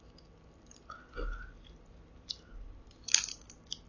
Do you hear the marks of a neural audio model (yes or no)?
no